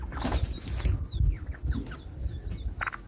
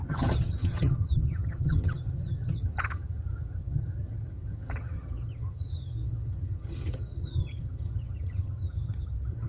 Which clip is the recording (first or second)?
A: first